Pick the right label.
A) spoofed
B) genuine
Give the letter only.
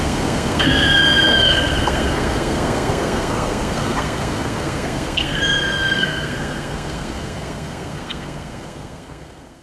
A